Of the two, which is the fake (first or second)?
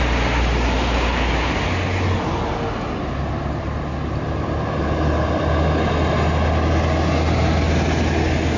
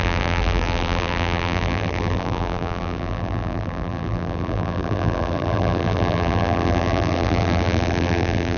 second